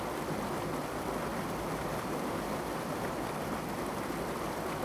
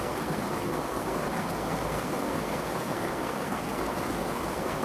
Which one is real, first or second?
first